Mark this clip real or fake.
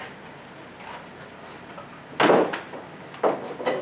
real